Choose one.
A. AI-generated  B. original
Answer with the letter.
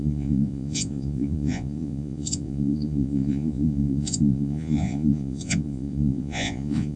A